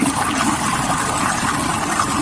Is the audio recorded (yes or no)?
yes